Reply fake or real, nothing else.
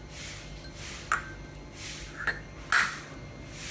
real